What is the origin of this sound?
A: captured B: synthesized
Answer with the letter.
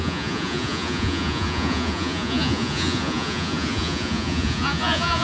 B